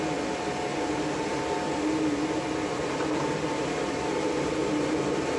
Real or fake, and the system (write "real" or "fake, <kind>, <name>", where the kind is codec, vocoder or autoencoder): real